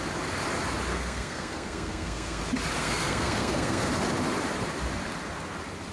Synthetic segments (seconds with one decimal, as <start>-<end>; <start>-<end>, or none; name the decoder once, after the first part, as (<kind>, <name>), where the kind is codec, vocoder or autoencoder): 0.9-2.4 (codec, SNAC); 2.8-3.9